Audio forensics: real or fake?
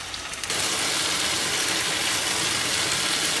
real